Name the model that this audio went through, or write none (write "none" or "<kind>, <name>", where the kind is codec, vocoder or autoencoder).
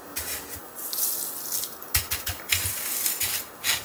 none